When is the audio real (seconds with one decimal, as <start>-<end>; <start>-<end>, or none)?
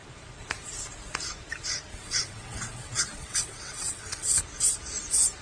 0.0-1.9; 4.4-5.4